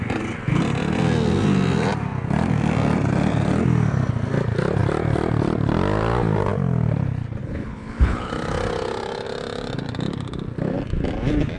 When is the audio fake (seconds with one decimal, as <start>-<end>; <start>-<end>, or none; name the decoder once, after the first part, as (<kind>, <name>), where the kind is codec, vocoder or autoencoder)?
7.4-8.3 (codec, HILCodec)